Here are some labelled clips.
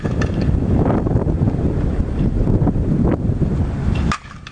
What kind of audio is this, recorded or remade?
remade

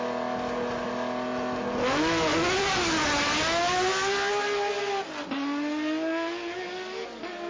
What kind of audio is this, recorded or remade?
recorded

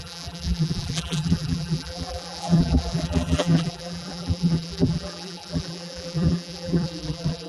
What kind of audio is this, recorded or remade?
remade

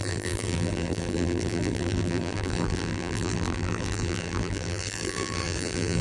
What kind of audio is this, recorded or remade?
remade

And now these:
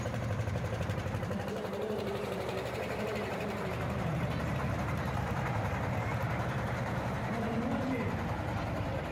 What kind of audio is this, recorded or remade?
remade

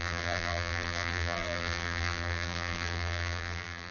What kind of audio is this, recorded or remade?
remade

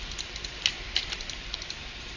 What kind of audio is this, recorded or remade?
remade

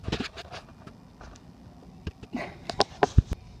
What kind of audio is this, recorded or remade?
recorded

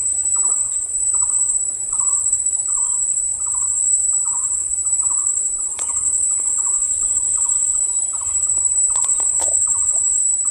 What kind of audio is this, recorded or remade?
remade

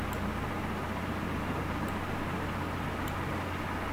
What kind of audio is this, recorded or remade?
recorded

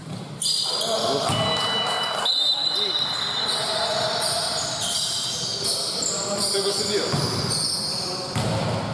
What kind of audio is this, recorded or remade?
remade